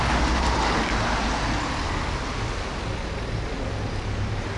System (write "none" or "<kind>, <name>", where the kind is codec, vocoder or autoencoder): none